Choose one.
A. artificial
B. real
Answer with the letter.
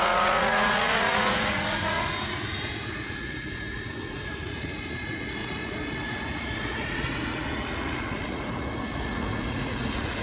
A